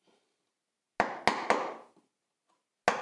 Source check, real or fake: real